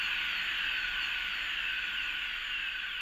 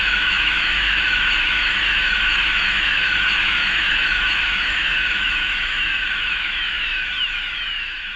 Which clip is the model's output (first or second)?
second